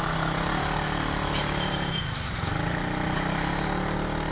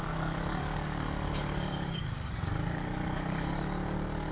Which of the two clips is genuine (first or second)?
first